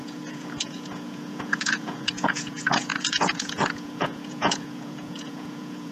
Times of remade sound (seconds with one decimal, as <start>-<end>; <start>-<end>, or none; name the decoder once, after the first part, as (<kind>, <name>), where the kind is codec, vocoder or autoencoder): 0.0-5.9 (vocoder, Vocos)